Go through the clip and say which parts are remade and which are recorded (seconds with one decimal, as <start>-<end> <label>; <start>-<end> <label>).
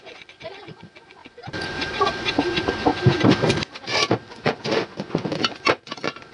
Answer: 0.0-2.9 remade; 2.9-4.2 recorded; 4.2-6.3 remade